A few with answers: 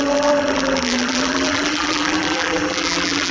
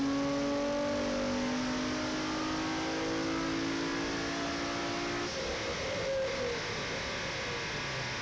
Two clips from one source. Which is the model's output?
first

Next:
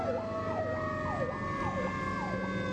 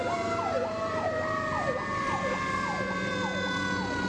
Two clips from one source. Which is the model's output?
second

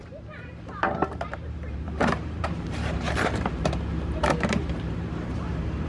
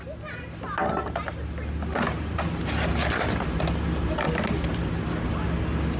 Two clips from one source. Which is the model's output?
first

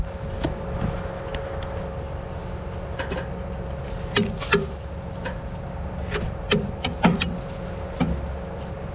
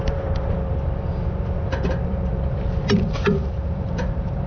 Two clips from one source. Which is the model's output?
second